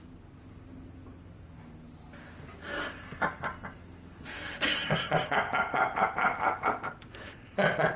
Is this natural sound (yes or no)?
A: yes